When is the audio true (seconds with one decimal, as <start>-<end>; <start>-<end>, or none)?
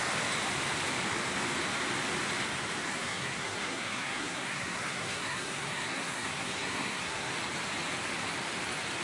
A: 0.0-2.9; 7.3-9.0